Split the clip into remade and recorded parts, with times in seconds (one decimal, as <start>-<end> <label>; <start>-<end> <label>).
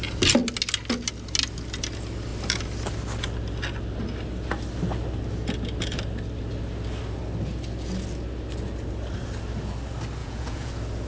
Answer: 0.0-10.2 recorded; 10.2-10.7 remade; 10.7-11.1 recorded